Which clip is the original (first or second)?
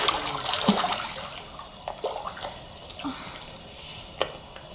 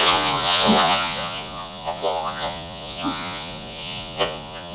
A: first